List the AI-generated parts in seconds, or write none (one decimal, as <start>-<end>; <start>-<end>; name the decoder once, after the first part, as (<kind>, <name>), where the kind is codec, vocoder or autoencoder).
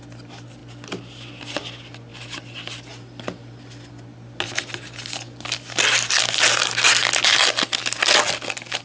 none